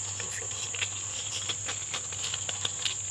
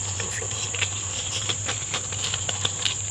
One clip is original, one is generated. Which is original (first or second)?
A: first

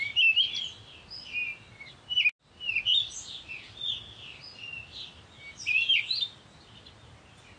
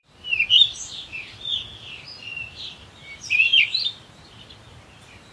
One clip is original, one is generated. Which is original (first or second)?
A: first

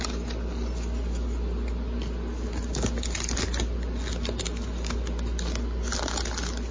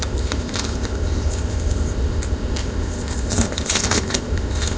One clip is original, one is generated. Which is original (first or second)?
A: first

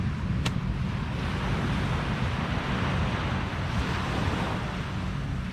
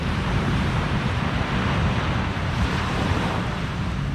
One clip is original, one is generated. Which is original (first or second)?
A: first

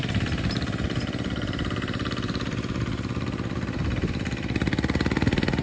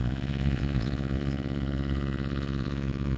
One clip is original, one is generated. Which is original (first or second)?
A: first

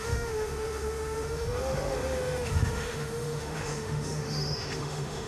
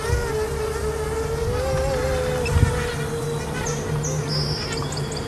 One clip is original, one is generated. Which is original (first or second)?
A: second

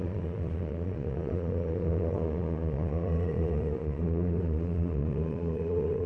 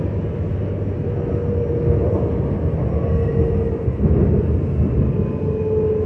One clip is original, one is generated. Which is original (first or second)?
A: second